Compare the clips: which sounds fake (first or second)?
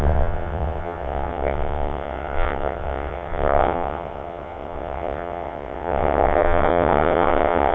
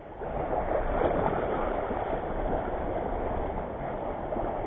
first